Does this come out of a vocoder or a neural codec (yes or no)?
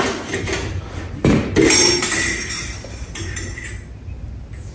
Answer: no